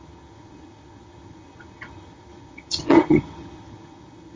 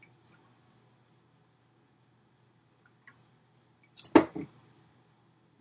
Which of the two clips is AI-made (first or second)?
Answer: first